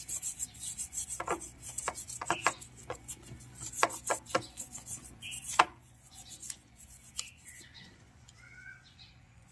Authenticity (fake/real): fake